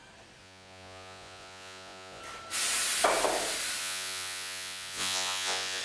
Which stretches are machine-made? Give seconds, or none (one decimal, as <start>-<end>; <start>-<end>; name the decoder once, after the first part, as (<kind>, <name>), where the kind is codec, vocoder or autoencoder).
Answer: 0.4-2.2 (vocoder, Vocos); 3.8-5.8